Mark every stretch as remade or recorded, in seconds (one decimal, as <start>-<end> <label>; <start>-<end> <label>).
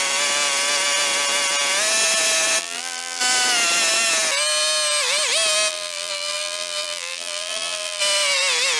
0.0-2.6 recorded; 2.6-3.2 remade; 3.2-5.7 recorded; 5.7-8.0 remade; 8.0-8.8 recorded